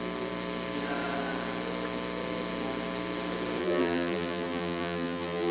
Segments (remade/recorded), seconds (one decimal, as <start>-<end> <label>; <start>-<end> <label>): 0.0-3.6 recorded; 3.6-5.5 remade